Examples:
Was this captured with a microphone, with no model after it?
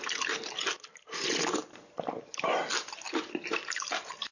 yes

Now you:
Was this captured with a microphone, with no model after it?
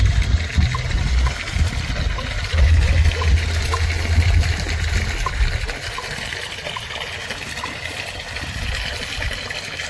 yes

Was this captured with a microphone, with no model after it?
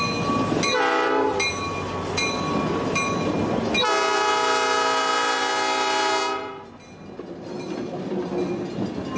yes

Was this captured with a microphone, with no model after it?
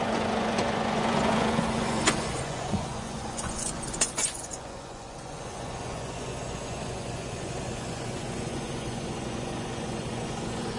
no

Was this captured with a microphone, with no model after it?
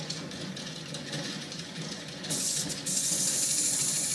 no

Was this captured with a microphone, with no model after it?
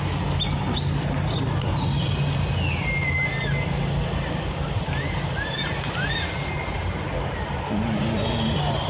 yes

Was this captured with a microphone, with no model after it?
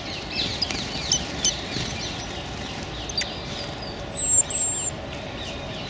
yes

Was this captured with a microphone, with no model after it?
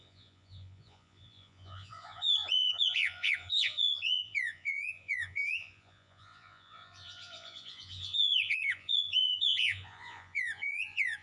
no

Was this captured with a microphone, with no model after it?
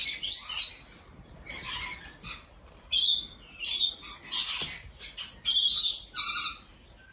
yes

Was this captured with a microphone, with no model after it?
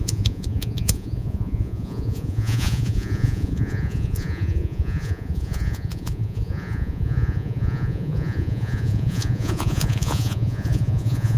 no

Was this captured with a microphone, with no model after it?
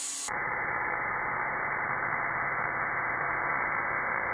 no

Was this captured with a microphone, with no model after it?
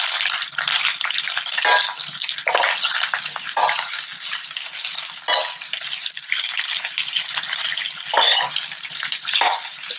yes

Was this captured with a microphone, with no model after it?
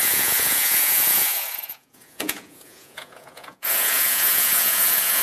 no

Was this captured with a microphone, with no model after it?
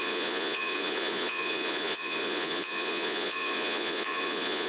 no